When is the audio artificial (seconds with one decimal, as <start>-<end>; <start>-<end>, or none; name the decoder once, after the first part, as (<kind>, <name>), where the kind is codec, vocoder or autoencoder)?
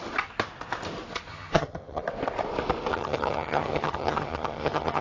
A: 1.3-2.0 (vocoder, HiFi-GAN); 2.9-5.0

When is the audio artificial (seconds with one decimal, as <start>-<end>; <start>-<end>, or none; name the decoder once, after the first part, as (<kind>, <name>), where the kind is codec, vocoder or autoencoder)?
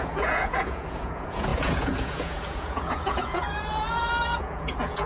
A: 0.0-5.1 (vocoder, Vocos)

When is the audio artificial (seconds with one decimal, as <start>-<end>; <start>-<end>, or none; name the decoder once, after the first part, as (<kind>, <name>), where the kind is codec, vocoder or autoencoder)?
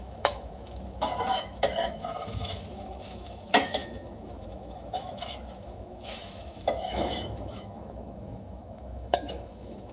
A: 0.0-9.9 (autoencoder, DAC-VAE)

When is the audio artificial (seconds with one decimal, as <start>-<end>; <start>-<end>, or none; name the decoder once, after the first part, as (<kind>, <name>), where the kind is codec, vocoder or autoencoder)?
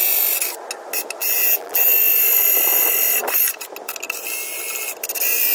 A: 1.2-1.9 (vocoder, BigVGAN v2)